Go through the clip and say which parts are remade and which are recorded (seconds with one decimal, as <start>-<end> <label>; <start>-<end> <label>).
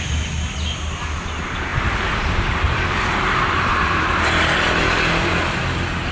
0.0-1.7 recorded; 1.7-5.4 remade; 5.4-6.1 recorded